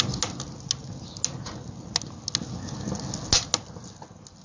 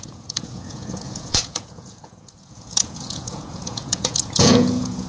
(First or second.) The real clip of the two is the first